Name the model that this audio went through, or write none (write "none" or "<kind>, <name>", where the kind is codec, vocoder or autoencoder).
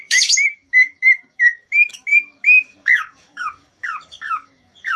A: codec, DAC